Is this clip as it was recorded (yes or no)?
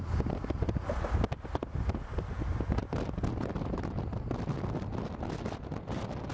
yes